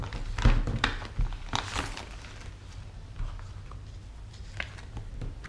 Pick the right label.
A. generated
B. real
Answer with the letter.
B